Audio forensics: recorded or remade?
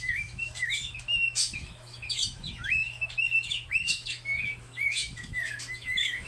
remade